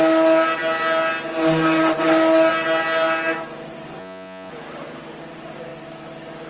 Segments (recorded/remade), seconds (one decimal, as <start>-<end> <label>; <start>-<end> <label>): 0.0-4.0 recorded; 4.0-4.5 remade; 4.5-6.5 recorded